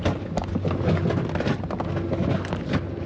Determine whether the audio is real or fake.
real